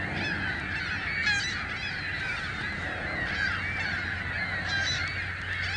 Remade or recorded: recorded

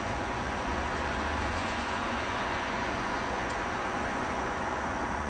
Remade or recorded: remade